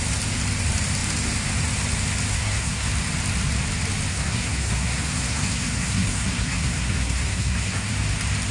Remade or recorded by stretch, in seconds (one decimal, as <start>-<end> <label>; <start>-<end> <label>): 0.0-2.3 recorded; 2.3-2.9 remade; 2.9-4.1 recorded; 4.1-7.9 remade; 7.9-8.5 recorded